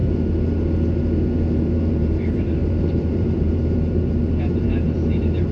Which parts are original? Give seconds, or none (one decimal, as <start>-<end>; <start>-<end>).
0.0-1.9